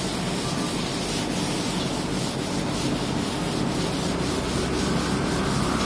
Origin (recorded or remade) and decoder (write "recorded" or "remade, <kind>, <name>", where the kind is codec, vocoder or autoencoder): recorded